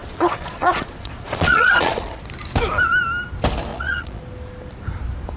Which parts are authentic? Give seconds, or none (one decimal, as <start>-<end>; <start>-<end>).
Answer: 2.2-3.7; 4.2-5.4